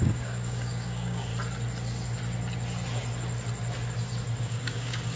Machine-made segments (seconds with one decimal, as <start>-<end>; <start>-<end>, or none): 0.0-1.3; 4.4-5.2